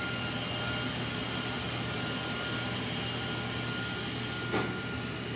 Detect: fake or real real